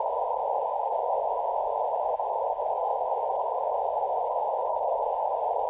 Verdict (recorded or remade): remade